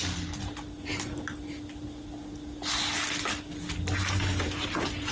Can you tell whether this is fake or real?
real